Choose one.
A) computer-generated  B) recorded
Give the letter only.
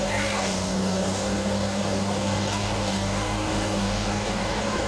A